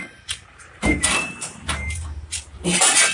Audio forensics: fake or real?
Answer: fake